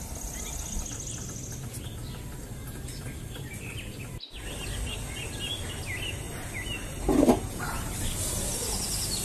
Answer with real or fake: real